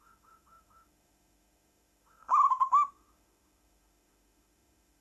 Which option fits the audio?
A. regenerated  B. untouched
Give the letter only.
A